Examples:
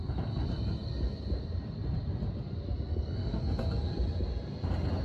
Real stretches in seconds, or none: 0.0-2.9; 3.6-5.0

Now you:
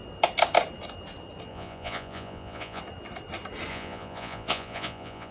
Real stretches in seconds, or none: 0.0-1.5; 2.8-3.7

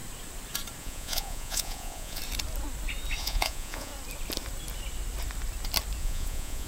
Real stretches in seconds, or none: 0.0-0.8; 2.2-3.2; 3.9-6.0

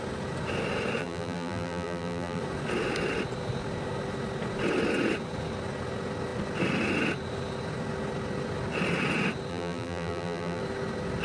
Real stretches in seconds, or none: 0.0-1.0; 2.4-9.5; 10.6-11.2

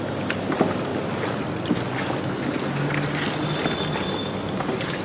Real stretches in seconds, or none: 0.0-5.0

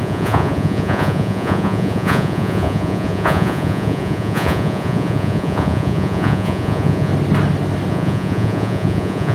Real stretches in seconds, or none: 7.1-7.9

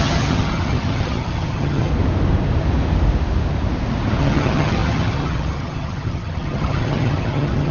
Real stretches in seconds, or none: 1.9-4.2

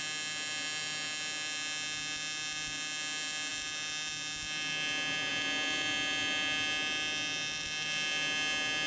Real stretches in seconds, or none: 0.0-8.9